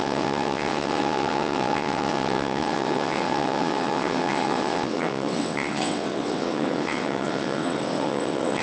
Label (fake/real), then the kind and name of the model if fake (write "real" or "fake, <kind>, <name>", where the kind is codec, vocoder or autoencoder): fake, vocoder, WaveNeXt